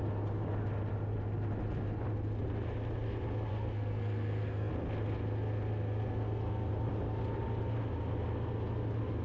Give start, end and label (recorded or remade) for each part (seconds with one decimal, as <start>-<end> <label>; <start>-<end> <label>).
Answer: 0.0-3.5 recorded; 3.5-4.7 remade; 4.7-9.2 recorded